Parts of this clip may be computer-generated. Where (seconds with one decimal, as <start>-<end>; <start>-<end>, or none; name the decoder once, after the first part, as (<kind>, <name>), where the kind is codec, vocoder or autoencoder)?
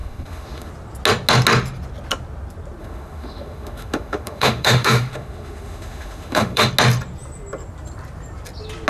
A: 0.0-0.7 (autoencoder, DAC-VAE); 2.8-6.7